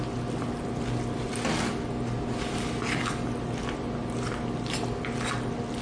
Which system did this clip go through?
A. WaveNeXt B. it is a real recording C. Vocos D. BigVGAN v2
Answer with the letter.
B